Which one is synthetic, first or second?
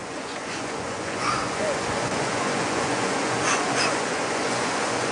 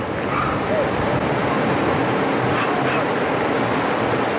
first